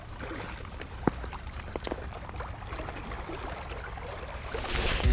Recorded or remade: recorded